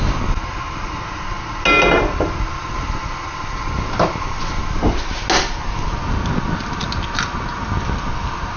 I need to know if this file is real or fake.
real